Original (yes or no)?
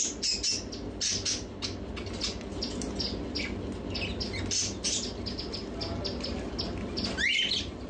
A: yes